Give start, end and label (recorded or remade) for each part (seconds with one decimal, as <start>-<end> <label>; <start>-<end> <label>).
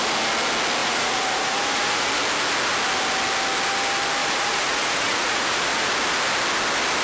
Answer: 0.0-0.8 recorded; 0.8-2.1 remade; 2.1-4.2 recorded; 4.2-5.9 remade; 5.9-7.0 recorded